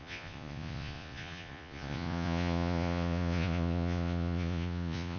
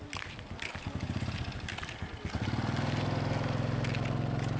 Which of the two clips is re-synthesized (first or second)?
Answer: first